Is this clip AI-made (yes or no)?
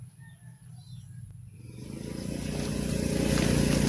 no